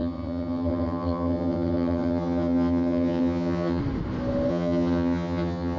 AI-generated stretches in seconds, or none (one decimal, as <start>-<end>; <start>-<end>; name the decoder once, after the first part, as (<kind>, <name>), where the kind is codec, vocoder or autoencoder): 0.0-3.8 (vocoder, HiFi-GAN); 4.5-5.8